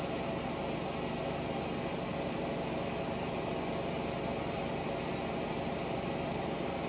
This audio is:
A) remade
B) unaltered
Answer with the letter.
B